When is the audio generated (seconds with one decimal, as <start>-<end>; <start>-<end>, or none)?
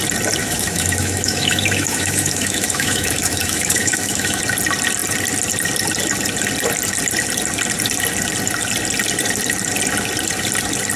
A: 0.4-4.4